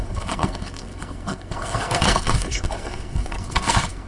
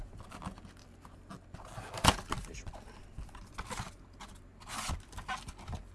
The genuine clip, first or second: second